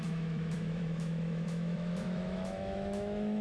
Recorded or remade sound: remade